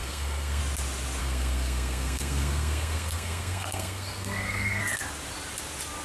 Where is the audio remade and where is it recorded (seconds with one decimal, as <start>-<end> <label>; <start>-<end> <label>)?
0.0-0.6 remade; 0.6-1.2 recorded; 1.2-4.8 remade; 4.8-6.0 recorded